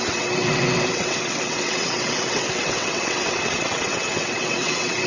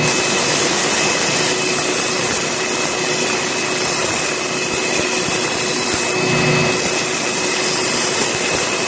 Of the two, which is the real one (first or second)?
second